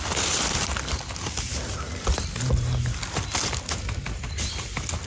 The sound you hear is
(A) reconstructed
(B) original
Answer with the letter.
B